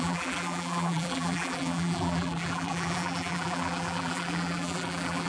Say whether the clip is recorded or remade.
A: remade